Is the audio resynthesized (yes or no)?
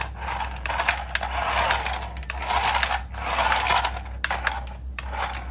no